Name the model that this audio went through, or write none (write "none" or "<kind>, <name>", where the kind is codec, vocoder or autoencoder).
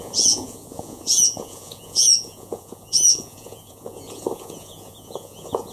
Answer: vocoder, Vocos